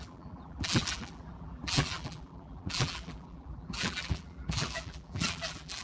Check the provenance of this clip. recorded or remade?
remade